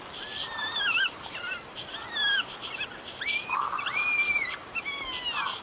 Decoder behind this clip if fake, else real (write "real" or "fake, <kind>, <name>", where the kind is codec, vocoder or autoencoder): real